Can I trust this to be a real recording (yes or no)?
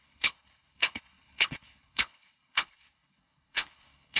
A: no